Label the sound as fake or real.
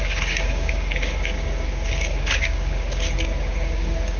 fake